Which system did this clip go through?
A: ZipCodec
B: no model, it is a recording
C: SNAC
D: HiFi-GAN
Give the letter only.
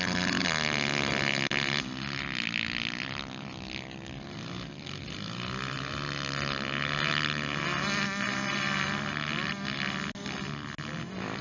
B